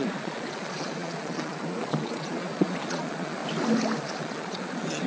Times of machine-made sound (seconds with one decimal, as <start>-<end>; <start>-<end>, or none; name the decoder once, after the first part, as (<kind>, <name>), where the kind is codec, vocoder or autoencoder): 0.0-3.4 (vocoder, Vocos); 4.0-5.1